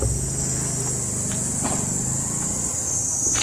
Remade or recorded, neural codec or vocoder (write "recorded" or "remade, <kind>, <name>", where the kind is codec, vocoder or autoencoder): recorded